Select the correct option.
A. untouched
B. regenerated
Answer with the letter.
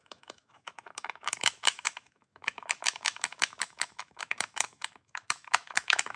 B